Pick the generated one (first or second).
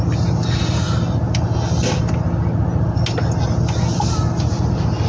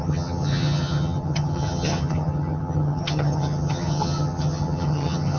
second